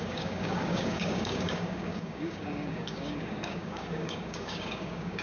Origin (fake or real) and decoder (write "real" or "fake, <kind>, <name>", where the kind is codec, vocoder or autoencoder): fake, codec, DAC